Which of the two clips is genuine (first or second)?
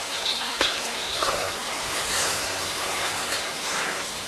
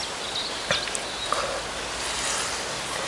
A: second